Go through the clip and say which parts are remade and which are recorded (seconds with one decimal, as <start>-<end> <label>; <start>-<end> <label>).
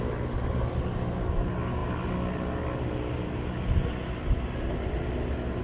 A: 0.0-5.6 recorded